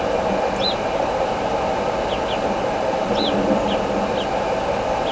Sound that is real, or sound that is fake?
real